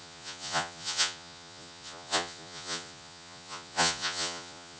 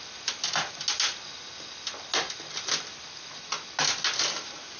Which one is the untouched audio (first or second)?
second